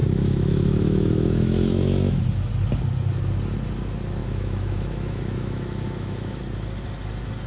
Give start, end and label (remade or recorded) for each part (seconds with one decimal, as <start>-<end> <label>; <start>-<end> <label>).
0.0-2.2 remade; 2.2-4.2 recorded; 4.2-6.4 remade; 6.4-7.5 recorded